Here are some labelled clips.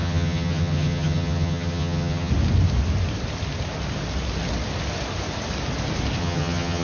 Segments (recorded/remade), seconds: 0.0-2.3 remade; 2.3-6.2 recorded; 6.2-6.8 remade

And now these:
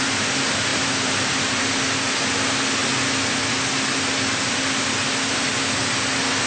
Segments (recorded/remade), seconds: 0.0-0.7 recorded; 0.7-1.7 remade; 1.7-6.5 recorded